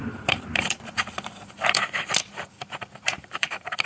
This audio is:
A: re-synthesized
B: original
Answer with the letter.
A